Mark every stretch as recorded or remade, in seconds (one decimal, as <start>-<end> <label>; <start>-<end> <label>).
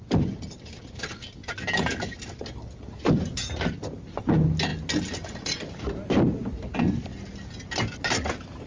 0.0-8.7 recorded